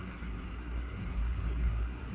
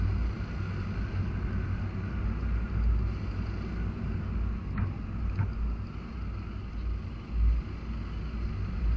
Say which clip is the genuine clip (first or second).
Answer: second